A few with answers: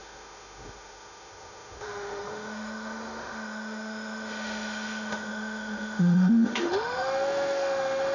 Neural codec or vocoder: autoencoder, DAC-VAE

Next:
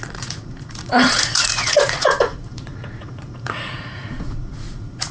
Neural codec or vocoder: vocoder, Vocos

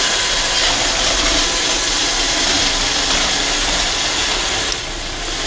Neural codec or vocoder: none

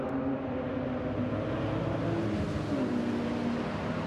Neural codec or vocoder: none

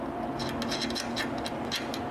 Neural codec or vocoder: none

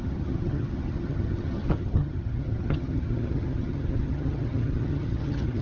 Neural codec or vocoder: vocoder, HiFi-GAN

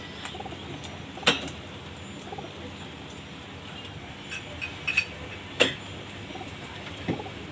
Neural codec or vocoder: none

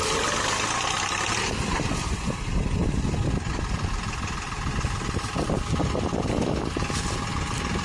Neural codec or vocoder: none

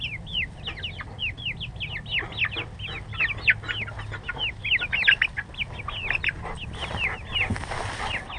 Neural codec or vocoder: none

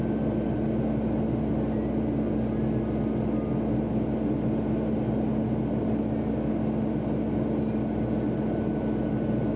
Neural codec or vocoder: none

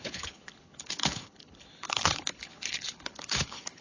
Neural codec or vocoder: codec, HILCodec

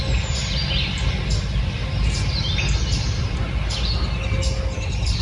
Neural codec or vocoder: none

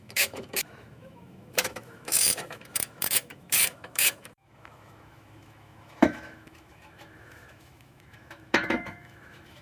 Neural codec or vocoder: autoencoder, DAC-VAE